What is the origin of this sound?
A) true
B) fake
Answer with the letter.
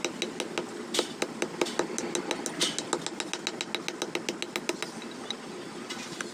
A